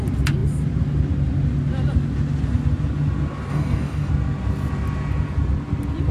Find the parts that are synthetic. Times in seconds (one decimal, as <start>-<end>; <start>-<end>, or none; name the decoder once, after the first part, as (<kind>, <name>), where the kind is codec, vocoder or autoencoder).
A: 3.5-4.1 (codec, DAC)